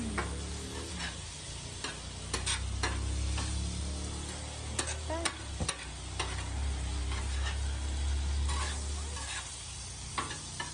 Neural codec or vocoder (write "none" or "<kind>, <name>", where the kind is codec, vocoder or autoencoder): none